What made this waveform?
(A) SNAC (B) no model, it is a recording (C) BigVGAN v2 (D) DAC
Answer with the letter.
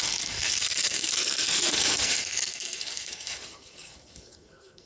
A